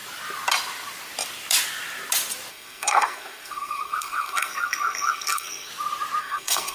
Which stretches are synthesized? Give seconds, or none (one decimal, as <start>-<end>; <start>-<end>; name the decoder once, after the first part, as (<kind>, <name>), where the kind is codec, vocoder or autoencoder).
2.5-5.7 (codec, SNAC); 6.2-6.7